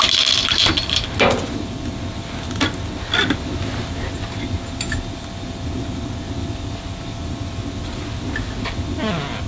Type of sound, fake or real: real